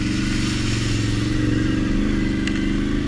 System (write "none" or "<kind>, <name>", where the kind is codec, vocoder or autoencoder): none